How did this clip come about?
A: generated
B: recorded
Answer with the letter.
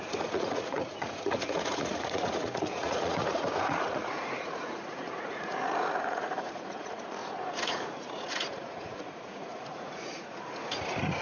A